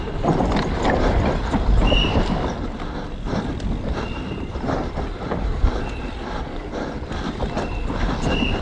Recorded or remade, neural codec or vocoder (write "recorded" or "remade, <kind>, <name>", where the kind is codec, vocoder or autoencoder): remade, vocoder, BigVGAN v2